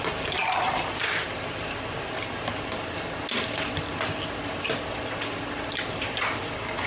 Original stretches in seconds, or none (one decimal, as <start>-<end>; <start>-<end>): 0.0-6.9